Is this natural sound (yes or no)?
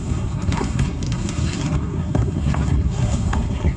no